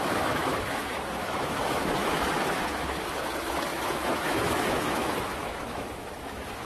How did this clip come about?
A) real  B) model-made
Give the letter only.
B